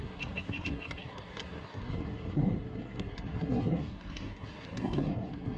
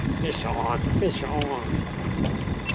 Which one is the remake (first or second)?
first